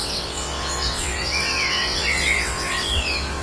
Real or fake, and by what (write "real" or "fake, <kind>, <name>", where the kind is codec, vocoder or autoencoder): fake, vocoder, WaveNeXt